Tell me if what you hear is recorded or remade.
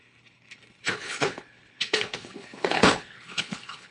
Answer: remade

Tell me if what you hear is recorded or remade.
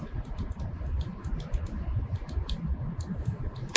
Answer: recorded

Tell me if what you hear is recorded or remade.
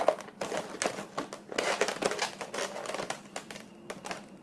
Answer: recorded